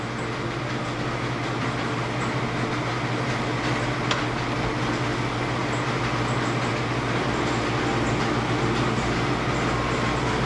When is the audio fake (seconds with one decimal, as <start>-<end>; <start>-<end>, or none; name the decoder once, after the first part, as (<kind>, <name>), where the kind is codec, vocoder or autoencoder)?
none